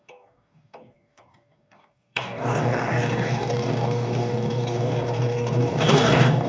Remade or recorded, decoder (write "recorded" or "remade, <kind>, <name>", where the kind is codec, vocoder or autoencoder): remade, codec, DAC